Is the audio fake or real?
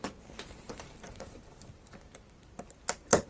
fake